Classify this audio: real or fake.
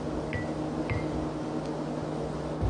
real